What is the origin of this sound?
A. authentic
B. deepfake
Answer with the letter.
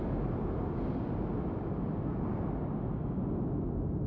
A